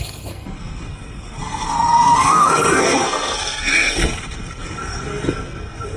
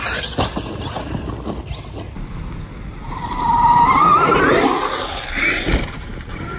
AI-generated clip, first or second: first